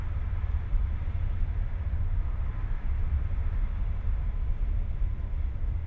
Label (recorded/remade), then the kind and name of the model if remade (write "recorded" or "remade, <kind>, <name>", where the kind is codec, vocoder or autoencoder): remade, vocoder, BigVGAN v2